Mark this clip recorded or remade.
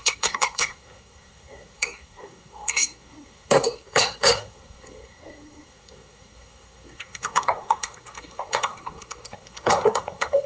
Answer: remade